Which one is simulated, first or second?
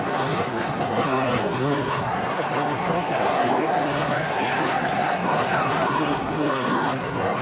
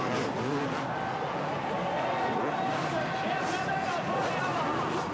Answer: first